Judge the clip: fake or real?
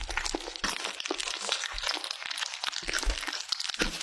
real